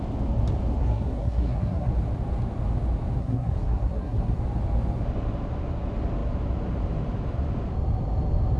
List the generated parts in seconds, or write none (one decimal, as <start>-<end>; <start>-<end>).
0.8-1.9; 3.2-4.4